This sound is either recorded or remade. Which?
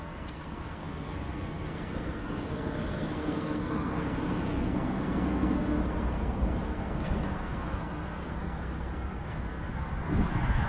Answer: remade